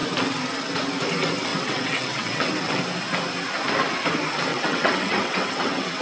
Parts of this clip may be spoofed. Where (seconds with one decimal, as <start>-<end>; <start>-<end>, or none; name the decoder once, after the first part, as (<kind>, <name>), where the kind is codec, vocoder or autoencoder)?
1.5-2.8 (vocoder, WaveNeXt); 4.5-6.0

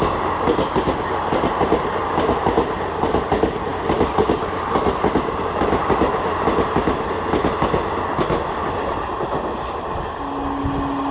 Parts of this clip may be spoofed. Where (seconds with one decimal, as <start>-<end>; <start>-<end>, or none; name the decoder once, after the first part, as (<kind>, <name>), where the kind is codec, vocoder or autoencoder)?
none

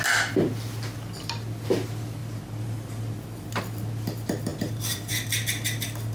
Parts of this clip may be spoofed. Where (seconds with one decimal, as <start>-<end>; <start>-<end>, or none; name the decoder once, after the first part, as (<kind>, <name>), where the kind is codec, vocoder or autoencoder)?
none

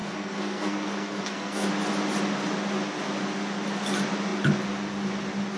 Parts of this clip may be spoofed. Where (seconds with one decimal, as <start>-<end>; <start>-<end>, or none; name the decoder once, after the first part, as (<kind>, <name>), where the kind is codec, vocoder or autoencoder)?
0.0-1.7 (codec, SNAC)

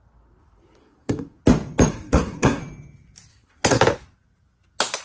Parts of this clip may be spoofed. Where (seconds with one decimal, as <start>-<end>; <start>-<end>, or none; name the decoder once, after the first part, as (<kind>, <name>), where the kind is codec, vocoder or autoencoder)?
0.8-1.4 (codec, SNAC); 1.9-2.6; 3.3-3.8